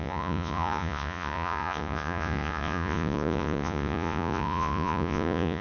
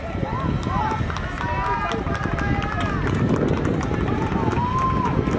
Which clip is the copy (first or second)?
first